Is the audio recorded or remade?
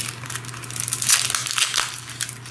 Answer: recorded